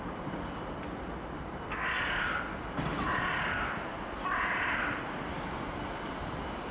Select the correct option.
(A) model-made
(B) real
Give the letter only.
B